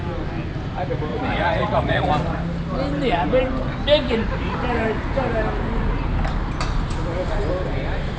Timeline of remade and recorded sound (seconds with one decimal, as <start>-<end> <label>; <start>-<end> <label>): 0.0-1.1 recorded; 1.1-2.1 remade; 2.1-8.2 recorded